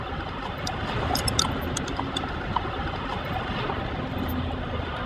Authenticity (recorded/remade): recorded